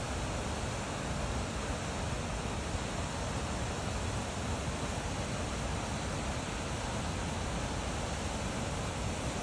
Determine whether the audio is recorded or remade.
recorded